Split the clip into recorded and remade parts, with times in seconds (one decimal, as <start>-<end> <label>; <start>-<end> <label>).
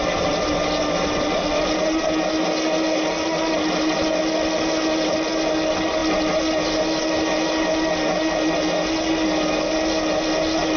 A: 0.0-10.8 recorded